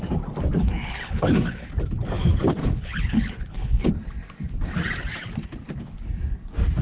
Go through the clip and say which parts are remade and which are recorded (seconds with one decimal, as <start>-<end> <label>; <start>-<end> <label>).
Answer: 0.0-0.6 recorded; 0.6-1.7 remade; 1.7-2.6 recorded; 2.6-3.9 remade; 3.9-6.8 recorded